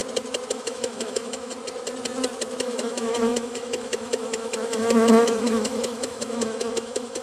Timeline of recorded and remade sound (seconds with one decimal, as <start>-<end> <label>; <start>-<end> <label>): 0.0-0.5 recorded; 0.5-1.5 remade; 1.5-2.6 recorded; 2.6-7.2 remade